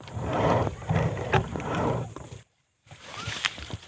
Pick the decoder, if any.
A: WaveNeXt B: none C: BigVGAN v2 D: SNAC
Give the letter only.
C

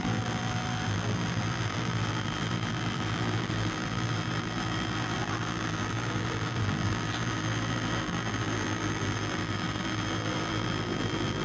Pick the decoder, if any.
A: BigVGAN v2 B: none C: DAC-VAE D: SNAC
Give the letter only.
A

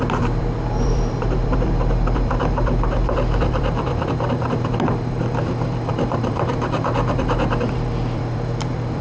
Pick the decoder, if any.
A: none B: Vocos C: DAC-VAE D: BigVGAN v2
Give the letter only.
D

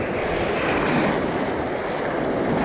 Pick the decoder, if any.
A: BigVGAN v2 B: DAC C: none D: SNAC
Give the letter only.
C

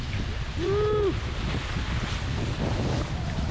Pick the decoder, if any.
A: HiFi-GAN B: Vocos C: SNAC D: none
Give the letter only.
D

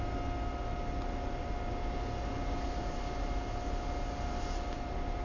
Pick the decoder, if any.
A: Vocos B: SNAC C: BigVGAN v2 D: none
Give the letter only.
D